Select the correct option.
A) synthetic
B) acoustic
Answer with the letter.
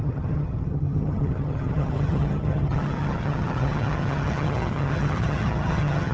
A